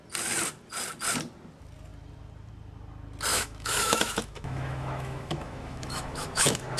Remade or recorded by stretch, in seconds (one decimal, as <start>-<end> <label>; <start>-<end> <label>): 0.0-3.3 recorded; 3.3-6.8 remade